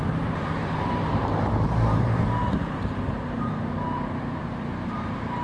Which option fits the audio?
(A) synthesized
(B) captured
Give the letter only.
A